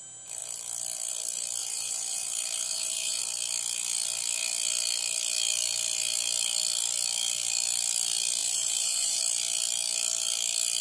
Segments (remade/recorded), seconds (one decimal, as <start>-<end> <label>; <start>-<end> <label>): 0.0-1.6 recorded; 1.6-3.2 remade; 3.2-8.4 recorded; 8.4-9.2 remade; 9.2-10.8 recorded